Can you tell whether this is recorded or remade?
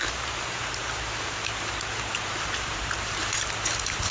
remade